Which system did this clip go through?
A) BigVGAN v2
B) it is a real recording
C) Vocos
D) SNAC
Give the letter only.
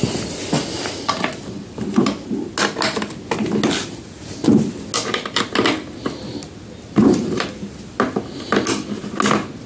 B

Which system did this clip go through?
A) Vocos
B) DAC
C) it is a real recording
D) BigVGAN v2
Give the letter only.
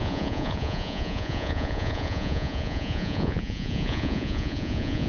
A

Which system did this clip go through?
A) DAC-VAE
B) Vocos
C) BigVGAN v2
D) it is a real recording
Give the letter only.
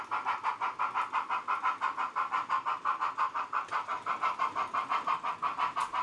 D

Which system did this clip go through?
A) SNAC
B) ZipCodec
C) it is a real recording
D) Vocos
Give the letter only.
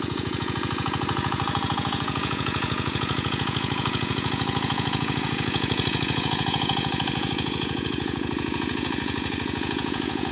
D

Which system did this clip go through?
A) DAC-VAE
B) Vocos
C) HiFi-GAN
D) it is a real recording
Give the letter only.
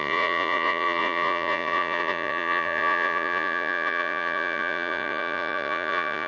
B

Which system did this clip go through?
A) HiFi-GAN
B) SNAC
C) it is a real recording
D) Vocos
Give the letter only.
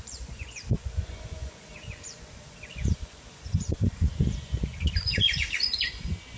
D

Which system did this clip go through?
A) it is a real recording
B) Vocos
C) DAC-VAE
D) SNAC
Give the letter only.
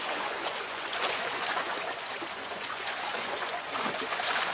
B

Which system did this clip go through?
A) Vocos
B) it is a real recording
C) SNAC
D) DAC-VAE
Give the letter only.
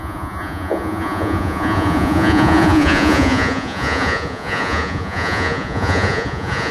A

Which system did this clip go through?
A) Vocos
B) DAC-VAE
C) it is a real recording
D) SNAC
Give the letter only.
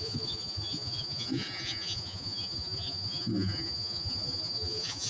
A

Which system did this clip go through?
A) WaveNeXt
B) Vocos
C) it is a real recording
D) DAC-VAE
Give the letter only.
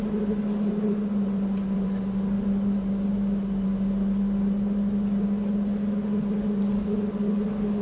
C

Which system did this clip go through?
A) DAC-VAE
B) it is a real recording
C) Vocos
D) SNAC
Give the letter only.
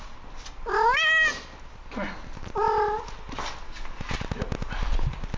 B